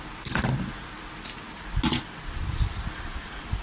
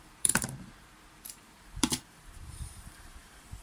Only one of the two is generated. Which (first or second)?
second